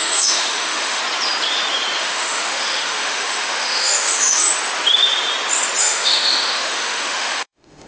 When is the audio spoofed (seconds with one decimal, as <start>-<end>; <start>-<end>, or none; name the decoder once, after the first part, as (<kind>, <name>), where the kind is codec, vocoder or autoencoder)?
0.0-1.0 (autoencoder, DAC-VAE); 2.0-4.5; 5.8-7.9